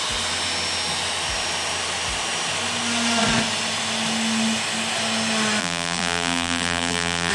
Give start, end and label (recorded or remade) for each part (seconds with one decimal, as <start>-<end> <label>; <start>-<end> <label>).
0.0-5.6 recorded; 5.6-7.3 remade